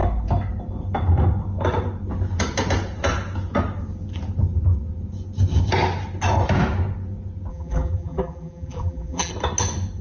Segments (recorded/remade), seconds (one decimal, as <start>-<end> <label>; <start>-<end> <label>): 0.0-7.5 recorded; 7.5-9.3 remade; 9.3-10.0 recorded